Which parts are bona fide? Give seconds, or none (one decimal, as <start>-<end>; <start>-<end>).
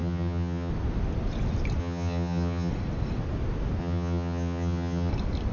0.7-1.8; 2.7-3.8; 5.1-5.5